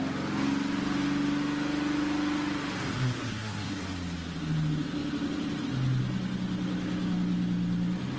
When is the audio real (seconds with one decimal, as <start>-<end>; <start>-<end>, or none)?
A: 0.0-2.9; 3.7-8.2

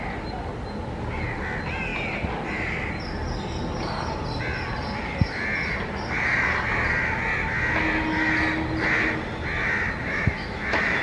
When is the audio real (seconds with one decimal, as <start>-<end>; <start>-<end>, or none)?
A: 0.0-10.0